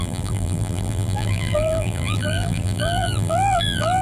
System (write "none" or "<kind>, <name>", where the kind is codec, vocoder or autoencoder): vocoder, BigVGAN v2